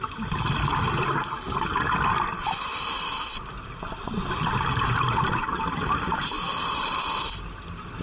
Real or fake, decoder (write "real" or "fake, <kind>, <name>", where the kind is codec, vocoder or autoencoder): fake, vocoder, BigVGAN v2